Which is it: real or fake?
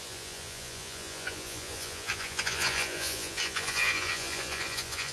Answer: fake